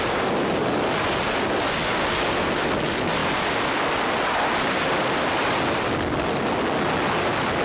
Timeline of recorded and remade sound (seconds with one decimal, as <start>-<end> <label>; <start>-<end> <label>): 0.0-7.6 recorded